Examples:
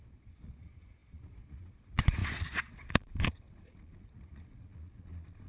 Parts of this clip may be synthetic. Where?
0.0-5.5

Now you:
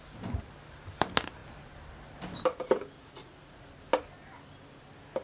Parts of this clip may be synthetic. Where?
3.0-3.7

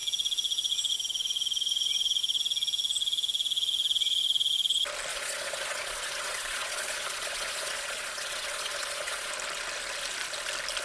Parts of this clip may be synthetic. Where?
5.1-9.3